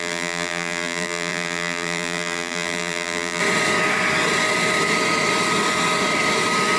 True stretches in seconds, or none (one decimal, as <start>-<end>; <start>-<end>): 3.4-6.8

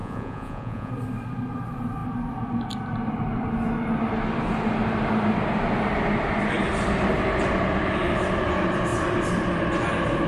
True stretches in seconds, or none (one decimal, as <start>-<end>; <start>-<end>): 0.9-10.3